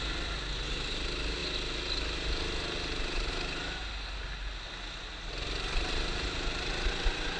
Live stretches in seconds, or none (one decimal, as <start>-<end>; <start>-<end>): 0.0-7.4